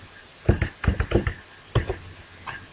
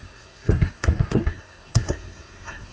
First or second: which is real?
first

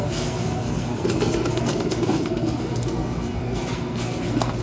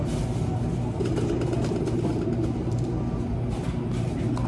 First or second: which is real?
second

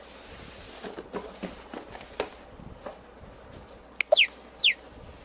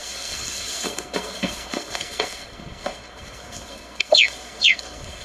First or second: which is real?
first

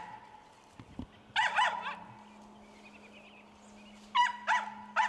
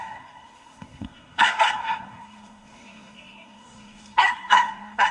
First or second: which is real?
first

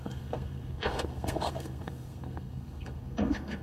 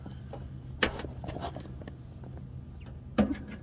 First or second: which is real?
second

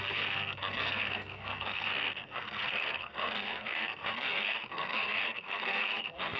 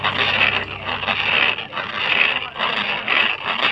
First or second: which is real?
second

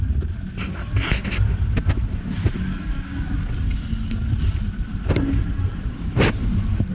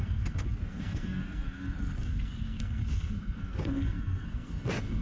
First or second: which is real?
first